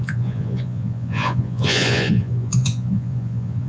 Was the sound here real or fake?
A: fake